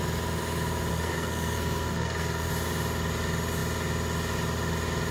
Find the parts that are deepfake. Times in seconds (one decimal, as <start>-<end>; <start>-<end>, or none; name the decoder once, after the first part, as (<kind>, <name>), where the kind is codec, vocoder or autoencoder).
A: 0.9-2.5 (codec, SNAC)